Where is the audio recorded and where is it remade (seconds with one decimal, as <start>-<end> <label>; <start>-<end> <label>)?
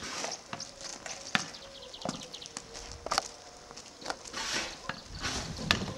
0.0-6.0 recorded